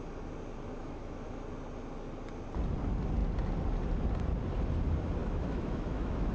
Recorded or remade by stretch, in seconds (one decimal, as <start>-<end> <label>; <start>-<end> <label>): 0.0-0.8 recorded; 0.8-1.4 remade; 1.4-5.2 recorded; 5.2-6.3 remade